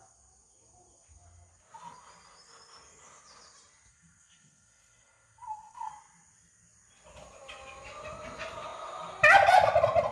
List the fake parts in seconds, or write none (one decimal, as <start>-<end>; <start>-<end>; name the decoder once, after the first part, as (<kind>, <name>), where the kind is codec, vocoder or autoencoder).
3.9-5.9 (codec, SNAC)